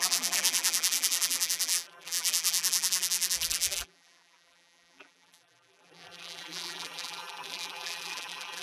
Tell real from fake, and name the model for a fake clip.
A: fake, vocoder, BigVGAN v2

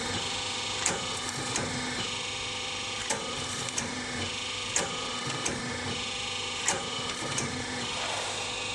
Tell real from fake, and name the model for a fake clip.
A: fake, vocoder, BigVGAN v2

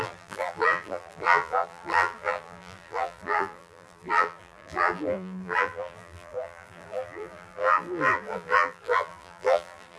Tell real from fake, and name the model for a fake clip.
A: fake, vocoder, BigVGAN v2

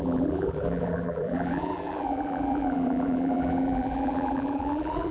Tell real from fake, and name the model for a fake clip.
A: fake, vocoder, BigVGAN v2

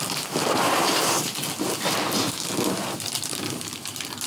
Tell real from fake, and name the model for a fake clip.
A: real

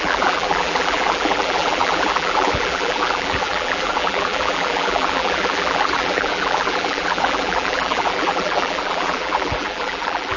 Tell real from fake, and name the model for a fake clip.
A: fake, vocoder, BigVGAN v2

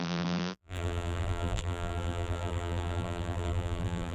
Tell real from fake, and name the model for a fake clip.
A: fake, vocoder, BigVGAN v2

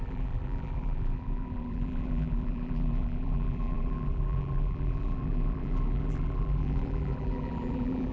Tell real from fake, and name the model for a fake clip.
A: fake, vocoder, BigVGAN v2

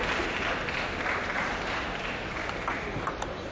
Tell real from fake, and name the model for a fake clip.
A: real